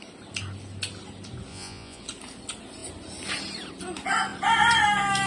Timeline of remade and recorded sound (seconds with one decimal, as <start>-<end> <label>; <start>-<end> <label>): 0.0-1.5 recorded; 1.5-2.0 remade; 2.0-5.3 recorded